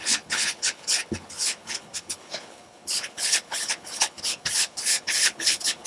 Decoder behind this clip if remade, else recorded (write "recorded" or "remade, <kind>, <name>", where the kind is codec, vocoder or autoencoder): remade, codec, HILCodec